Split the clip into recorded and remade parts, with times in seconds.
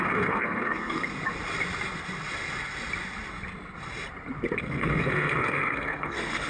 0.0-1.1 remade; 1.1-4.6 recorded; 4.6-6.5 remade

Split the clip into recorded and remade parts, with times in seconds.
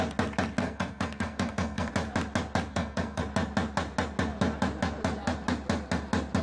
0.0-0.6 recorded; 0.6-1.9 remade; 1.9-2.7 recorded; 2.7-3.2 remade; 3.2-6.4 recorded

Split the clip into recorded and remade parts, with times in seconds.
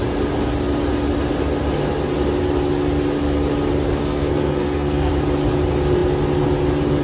0.0-4.0 recorded; 4.0-5.1 remade; 5.1-7.0 recorded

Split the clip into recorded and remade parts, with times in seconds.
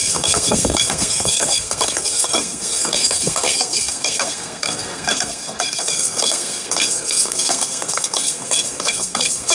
0.0-9.5 remade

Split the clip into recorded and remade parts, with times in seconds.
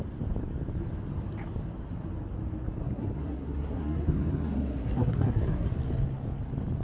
0.0-2.8 recorded; 2.8-5.7 remade; 5.7-6.8 recorded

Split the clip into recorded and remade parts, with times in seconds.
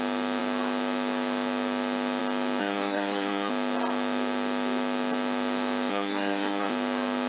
0.0-2.6 recorded; 2.6-3.5 remade; 3.5-5.9 recorded; 5.9-6.7 remade; 6.7-7.3 recorded